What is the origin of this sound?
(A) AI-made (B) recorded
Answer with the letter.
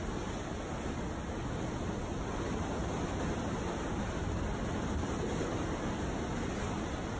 B